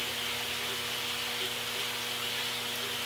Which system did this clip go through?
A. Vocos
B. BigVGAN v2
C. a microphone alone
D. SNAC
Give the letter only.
C